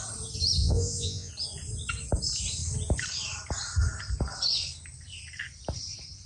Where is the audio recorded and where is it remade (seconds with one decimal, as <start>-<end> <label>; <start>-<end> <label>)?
0.0-0.6 recorded; 0.6-1.3 remade; 1.3-6.3 recorded